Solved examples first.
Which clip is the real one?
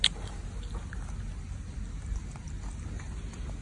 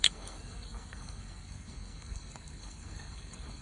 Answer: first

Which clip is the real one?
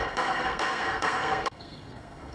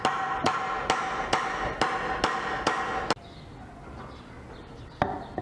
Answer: second